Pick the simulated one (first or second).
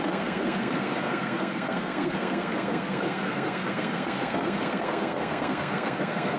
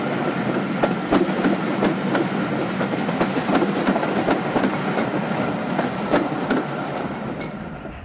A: first